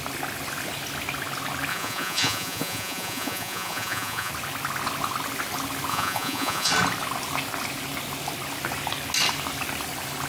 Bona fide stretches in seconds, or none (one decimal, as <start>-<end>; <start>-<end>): 0.0-1.7; 4.3-5.9; 6.7-10.3